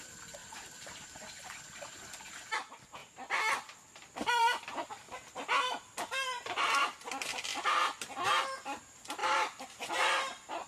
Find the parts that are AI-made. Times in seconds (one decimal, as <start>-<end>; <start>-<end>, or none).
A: 0.4-1.6; 3.0-4.9; 9.2-10.7